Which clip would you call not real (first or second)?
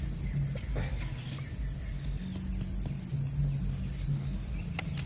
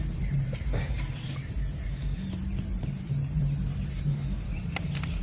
second